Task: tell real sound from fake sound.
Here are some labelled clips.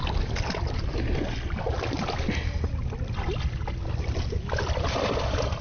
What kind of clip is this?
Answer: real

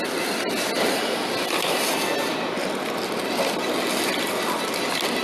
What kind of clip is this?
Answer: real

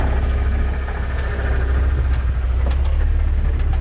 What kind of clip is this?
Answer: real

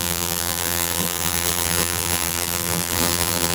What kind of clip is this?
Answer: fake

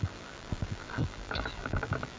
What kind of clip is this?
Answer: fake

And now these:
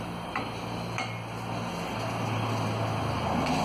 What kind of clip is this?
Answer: real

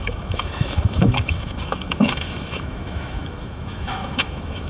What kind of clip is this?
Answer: fake